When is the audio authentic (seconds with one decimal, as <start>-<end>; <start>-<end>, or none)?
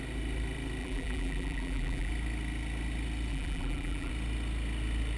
0.0-0.8; 2.1-3.3; 4.1-5.2